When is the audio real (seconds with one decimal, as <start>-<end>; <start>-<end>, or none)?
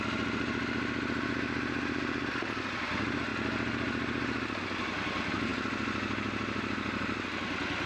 0.0-7.9